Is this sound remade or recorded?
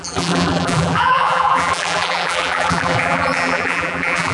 remade